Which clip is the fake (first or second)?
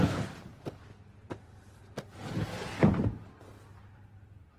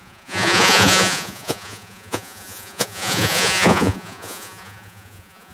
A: second